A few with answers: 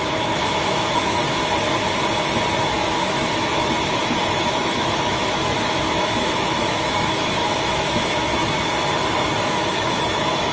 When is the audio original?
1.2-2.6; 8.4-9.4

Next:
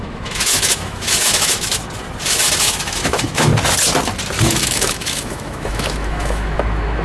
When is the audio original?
1.7-2.6; 3.5-4.4

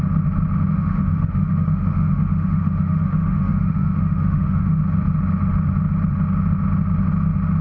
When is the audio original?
0.0-0.7; 4.8-7.6